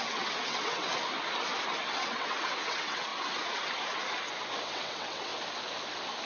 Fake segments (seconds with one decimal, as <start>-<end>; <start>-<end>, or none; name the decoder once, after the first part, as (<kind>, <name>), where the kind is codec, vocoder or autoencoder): 0.0-0.9 (vocoder, WaveNeXt); 1.8-3.1; 4.6-5.3

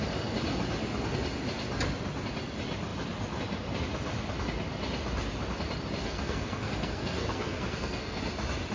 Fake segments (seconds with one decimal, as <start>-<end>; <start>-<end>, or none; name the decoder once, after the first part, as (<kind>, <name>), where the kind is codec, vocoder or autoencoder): 6.0-8.2 (codec, SNAC)

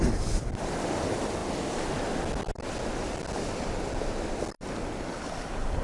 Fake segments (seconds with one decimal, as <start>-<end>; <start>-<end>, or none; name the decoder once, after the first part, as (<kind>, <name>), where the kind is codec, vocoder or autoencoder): none

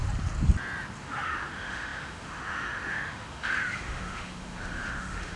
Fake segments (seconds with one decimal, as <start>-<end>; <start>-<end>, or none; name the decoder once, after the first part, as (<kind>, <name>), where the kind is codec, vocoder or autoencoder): 1.0-5.4 (autoencoder, DAC-VAE)

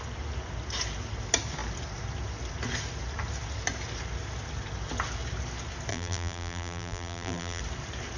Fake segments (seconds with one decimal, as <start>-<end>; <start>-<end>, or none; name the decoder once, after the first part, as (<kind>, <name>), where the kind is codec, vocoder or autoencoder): 5.9-7.6 (vocoder, BigVGAN v2)

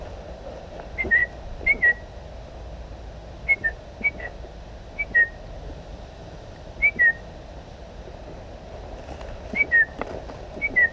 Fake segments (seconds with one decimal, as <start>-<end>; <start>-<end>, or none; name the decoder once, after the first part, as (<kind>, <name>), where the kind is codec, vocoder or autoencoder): 0.0-1.2 (vocoder, BigVGAN v2); 5.7-6.8; 10.4-10.9

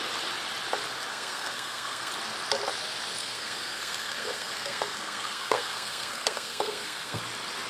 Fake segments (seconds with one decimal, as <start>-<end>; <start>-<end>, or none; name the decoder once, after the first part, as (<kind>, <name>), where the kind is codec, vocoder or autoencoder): 1.1-2.1 (codec, SNAC); 3.2-7.2

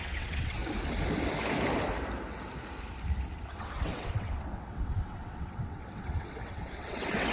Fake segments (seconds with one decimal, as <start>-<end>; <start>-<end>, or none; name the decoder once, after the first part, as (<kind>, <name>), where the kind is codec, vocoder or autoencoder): 0.0-0.6 (vocoder, WaveNeXt); 3.5-7.3